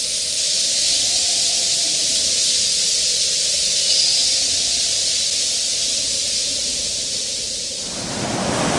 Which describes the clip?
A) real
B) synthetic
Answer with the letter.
A